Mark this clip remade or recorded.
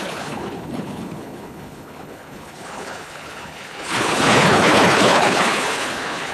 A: remade